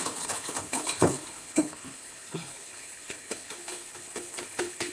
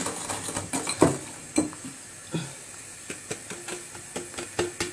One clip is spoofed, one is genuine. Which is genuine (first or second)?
second